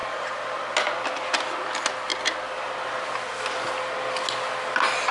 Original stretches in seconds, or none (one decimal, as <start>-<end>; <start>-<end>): 0.0-5.1